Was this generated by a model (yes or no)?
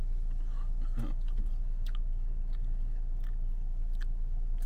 no